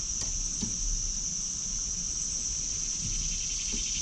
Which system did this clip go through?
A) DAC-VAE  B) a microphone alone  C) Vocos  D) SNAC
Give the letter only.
B